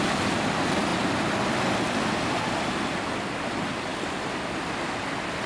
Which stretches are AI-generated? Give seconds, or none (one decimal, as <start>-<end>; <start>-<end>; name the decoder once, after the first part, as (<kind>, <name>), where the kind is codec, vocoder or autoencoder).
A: none